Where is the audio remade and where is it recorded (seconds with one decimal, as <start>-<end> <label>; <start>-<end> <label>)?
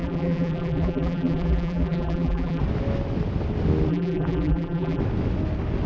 0.0-2.6 remade; 2.6-3.9 recorded; 3.9-5.0 remade; 5.0-5.9 recorded